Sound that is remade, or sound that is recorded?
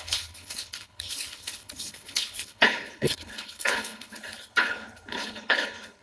remade